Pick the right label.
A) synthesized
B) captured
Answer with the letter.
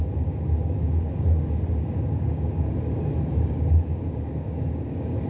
A